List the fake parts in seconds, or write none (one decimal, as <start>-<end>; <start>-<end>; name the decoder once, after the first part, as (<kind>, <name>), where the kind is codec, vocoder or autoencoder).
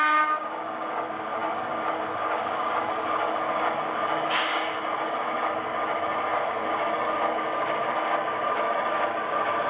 0.0-9.7 (codec, DAC)